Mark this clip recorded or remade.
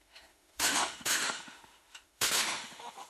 remade